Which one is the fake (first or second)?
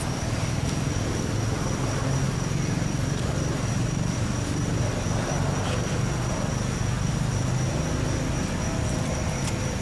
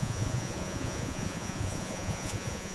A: second